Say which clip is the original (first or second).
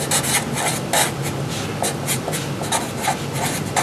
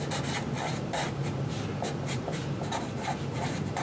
first